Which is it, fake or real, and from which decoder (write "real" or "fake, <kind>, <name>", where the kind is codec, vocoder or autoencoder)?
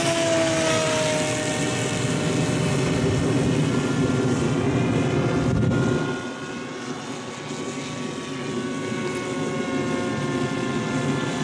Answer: real